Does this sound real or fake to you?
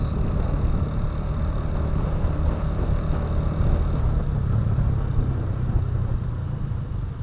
real